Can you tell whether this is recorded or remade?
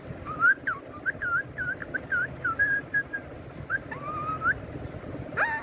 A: recorded